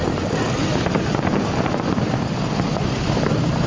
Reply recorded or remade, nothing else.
recorded